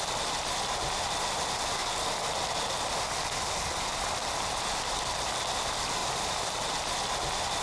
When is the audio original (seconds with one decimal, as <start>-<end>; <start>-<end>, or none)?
0.0-6.0; 6.7-7.6